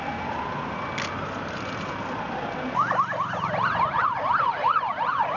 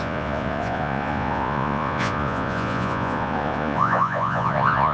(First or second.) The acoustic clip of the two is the first